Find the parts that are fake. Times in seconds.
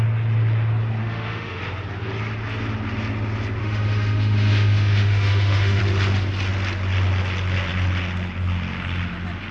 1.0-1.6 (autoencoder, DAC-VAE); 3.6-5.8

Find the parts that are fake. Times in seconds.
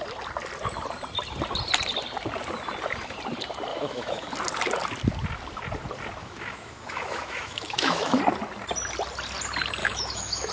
3.7-4.3 (autoencoder, DAC-VAE); 6.2-8.2; 9.8-10.5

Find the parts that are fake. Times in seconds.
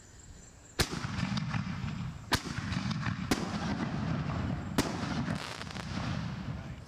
none